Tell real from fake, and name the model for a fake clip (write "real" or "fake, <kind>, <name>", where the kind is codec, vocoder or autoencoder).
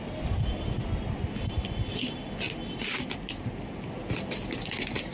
real